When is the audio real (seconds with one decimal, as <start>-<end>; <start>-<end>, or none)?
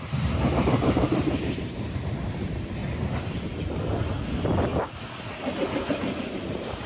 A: 2.8-6.3